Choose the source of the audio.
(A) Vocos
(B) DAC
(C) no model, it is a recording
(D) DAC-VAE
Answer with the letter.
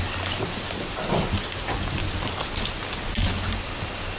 C